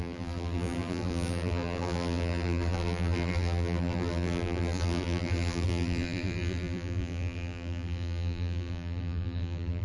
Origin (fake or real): fake